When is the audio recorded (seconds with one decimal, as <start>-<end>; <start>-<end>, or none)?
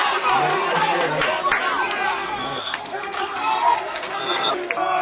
0.0-0.5; 1.2-2.1; 4.5-5.0